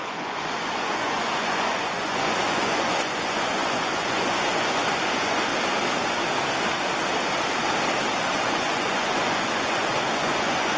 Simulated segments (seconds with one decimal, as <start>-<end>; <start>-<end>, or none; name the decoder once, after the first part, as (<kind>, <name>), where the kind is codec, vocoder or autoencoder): 0.0-5.5 (vocoder, Vocos); 8.3-10.8